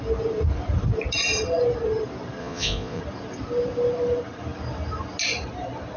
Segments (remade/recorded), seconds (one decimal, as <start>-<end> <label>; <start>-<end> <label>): 0.0-2.4 recorded; 2.4-3.0 remade; 3.0-6.0 recorded